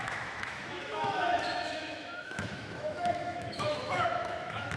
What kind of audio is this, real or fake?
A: fake